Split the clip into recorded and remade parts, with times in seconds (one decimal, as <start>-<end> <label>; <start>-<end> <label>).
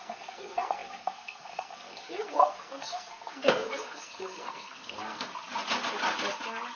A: 0.0-5.3 remade; 5.3-6.8 recorded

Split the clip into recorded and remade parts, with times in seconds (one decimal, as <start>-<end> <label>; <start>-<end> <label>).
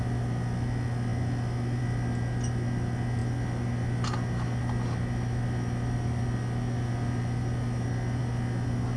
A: 0.0-9.0 recorded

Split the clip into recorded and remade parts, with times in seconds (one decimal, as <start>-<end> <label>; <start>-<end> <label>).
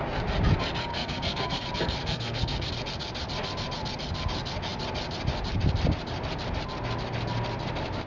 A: 0.0-0.9 recorded; 0.9-1.6 remade; 1.6-2.0 recorded; 2.0-2.7 remade; 2.7-8.1 recorded